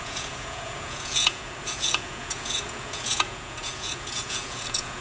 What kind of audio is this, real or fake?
fake